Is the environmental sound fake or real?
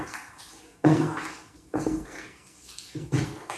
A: fake